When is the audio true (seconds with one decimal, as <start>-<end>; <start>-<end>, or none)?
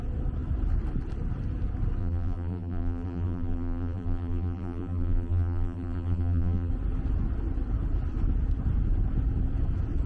0.0-2.0; 6.7-10.1